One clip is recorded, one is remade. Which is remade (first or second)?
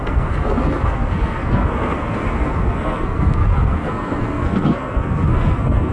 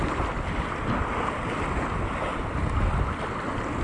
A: first